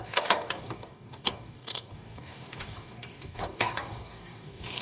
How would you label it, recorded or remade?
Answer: remade